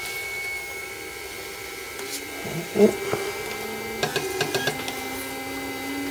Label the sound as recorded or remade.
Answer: recorded